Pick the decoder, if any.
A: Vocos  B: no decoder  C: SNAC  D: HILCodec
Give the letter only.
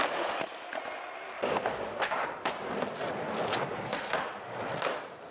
B